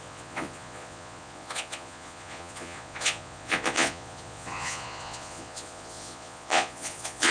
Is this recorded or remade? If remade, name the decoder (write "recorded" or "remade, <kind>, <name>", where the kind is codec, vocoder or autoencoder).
remade, vocoder, Vocos